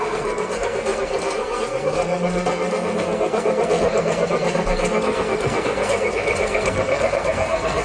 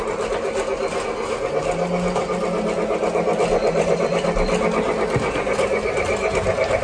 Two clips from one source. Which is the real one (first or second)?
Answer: second